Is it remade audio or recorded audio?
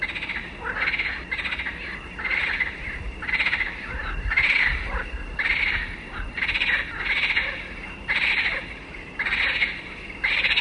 recorded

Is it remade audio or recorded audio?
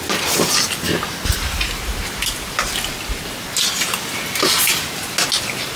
recorded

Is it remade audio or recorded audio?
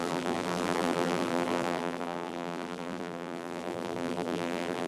remade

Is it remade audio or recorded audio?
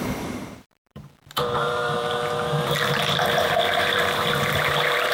remade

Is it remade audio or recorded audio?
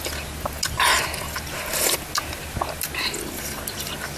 recorded